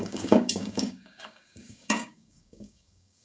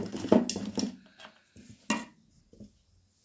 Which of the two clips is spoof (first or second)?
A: first